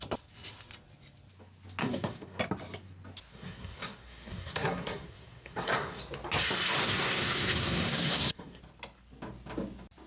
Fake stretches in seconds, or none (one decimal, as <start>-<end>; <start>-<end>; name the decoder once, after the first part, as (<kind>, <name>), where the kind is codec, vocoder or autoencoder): 1.8-2.4 (codec, SNAC); 3.3-6.0; 6.8-8.6